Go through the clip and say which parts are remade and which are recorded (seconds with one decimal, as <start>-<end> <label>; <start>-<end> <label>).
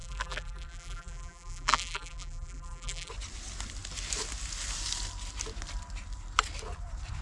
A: 0.0-3.1 remade; 3.1-7.2 recorded